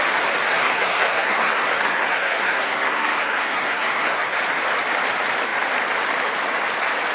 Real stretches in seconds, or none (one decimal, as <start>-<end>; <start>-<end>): 0.0-0.5; 4.4-7.1